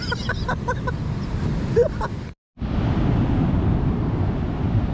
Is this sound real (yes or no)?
yes